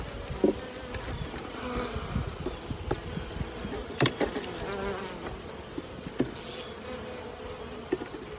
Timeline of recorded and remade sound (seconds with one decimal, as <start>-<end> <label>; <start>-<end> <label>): 0.0-3.8 recorded; 3.8-4.6 remade; 4.6-8.4 recorded